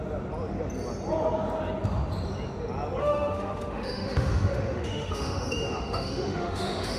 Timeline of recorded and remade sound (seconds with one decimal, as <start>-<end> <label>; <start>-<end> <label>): 0.0-3.0 recorded; 3.0-7.0 remade